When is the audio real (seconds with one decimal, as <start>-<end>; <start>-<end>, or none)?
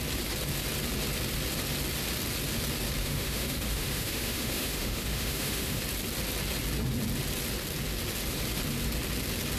0.0-3.0; 5.8-9.6